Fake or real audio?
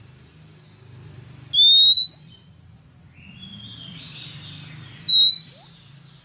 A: real